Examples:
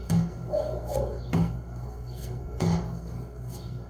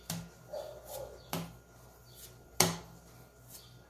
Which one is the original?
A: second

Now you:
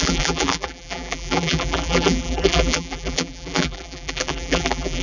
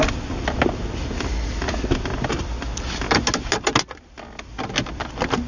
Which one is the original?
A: second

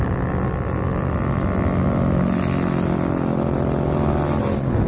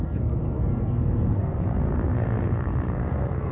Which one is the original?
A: first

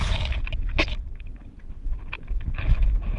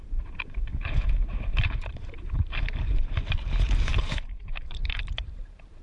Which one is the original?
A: first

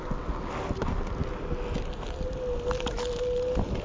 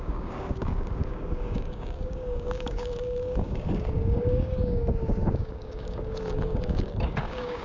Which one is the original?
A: first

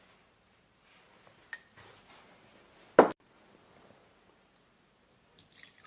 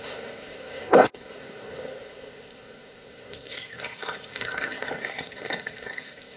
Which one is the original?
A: first